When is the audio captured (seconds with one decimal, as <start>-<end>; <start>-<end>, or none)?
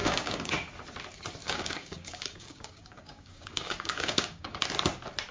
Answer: 0.5-1.4; 4.6-5.3